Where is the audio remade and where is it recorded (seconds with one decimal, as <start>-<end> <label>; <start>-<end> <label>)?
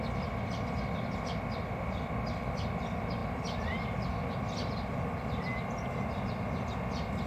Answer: 0.0-7.3 recorded